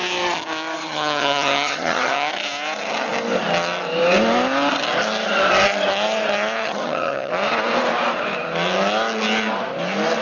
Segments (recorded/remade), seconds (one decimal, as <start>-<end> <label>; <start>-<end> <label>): 0.0-0.8 recorded; 0.8-2.3 remade; 2.3-6.6 recorded; 6.6-7.3 remade; 7.3-10.2 recorded